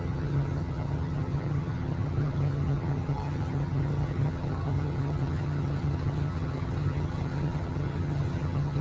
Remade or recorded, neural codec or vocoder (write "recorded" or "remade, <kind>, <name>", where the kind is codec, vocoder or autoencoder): remade, vocoder, HiFi-GAN